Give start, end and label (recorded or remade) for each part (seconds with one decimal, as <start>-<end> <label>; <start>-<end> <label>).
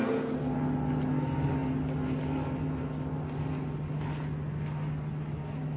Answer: 0.0-5.8 recorded